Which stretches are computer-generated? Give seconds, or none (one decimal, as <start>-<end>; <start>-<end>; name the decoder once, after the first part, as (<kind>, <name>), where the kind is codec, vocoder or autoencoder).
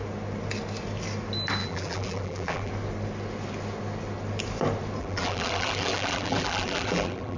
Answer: 1.6-2.7 (vocoder, BigVGAN v2); 5.0-7.4